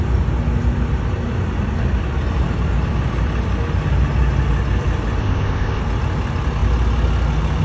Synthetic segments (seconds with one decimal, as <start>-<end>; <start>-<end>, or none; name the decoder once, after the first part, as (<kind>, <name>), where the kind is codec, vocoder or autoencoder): 5.2-5.8 (codec, ZipCodec)